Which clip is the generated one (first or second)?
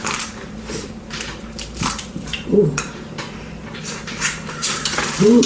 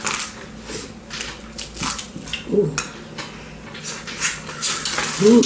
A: first